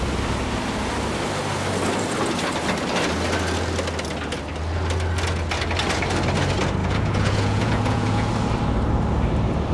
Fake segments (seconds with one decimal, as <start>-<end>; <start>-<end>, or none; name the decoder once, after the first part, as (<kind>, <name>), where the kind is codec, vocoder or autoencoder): 6.8-8.3 (vocoder, Vocos)